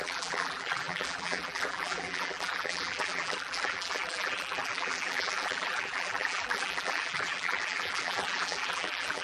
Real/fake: fake